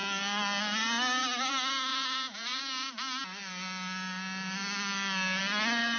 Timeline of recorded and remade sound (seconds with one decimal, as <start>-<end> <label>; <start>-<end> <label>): 0.0-1.9 recorded; 1.9-2.6 remade; 2.6-6.0 recorded

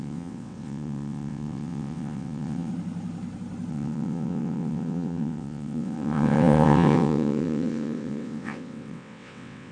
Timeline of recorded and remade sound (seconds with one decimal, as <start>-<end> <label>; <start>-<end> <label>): 0.0-2.7 remade; 2.7-3.7 recorded; 3.7-9.7 remade

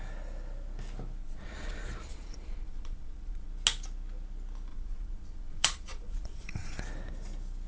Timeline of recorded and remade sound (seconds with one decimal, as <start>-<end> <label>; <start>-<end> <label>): 0.0-1.2 recorded; 1.2-3.5 remade; 3.5-4.7 recorded; 4.7-6.8 remade; 6.8-7.7 recorded